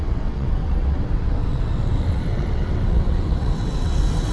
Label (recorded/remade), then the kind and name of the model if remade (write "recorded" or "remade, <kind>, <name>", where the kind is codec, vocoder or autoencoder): remade, vocoder, WaveNeXt